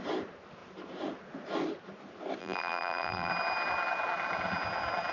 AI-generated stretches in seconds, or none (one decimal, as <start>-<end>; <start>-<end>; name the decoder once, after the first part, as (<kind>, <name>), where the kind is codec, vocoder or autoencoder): 2.4-3.3 (vocoder, BigVGAN v2)